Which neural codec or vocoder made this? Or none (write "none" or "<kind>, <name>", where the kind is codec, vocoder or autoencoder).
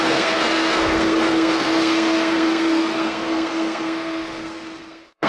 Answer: codec, SNAC